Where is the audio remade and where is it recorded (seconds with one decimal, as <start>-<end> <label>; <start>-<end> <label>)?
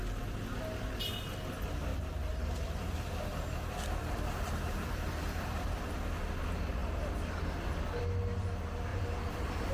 0.0-1.9 recorded; 1.9-6.3 remade; 6.3-8.9 recorded; 8.9-9.7 remade